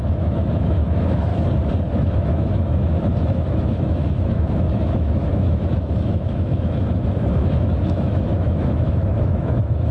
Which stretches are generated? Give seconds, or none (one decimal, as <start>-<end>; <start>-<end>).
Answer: 0.0-1.3; 1.9-9.9